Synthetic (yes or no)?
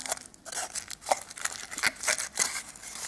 no